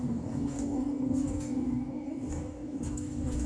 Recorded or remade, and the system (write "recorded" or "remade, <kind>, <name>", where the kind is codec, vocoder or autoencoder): remade, codec, DAC